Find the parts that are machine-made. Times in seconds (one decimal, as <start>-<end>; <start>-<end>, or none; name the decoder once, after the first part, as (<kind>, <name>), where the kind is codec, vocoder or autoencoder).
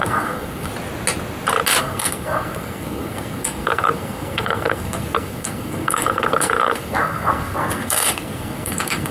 0.0-0.7 (codec, SNAC); 1.8-9.1